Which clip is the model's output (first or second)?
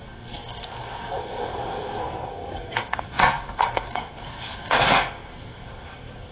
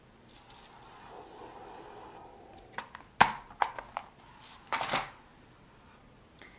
first